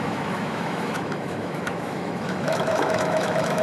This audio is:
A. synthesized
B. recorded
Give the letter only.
A